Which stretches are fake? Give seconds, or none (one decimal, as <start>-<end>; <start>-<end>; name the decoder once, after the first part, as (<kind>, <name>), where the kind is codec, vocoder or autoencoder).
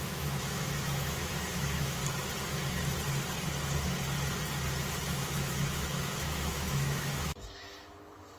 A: 0.0-2.0 (autoencoder, DAC-VAE); 4.9-8.4